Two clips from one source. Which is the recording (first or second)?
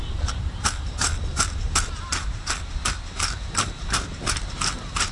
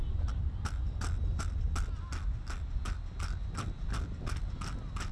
second